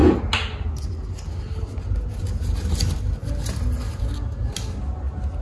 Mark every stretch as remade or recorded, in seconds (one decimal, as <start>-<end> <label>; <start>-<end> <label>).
0.0-5.4 recorded